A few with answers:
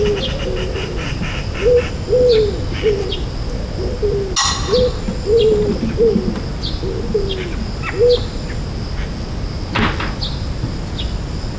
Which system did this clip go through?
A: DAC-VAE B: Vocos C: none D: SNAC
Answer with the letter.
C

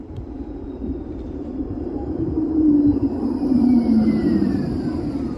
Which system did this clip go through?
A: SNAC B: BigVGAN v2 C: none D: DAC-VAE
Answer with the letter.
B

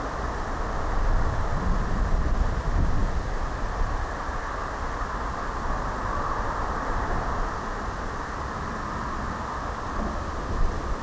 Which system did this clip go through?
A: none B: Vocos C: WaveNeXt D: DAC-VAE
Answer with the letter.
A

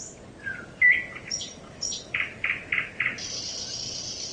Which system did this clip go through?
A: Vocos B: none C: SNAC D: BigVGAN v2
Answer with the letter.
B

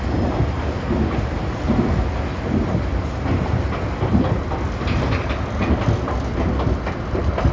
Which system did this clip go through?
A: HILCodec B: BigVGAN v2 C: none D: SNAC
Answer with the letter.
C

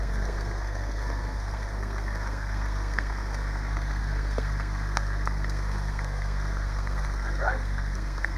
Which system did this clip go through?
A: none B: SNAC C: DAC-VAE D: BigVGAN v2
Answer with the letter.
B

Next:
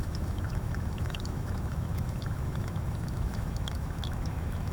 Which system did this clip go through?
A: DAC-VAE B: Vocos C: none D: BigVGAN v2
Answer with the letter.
A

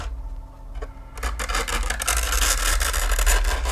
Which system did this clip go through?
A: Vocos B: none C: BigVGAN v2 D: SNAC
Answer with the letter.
B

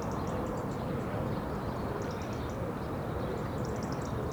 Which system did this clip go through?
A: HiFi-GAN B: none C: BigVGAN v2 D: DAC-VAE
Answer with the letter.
B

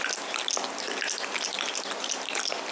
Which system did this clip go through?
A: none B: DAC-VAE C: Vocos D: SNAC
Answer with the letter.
A